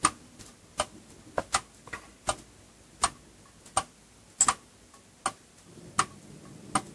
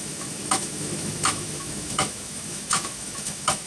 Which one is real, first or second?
first